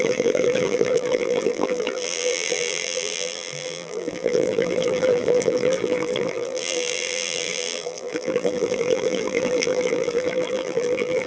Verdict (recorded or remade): remade